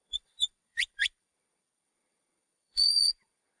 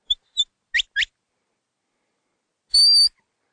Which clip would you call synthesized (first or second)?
first